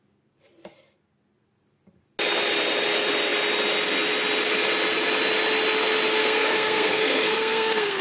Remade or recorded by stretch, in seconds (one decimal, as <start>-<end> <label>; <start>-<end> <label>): 0.0-6.2 recorded; 6.2-8.0 remade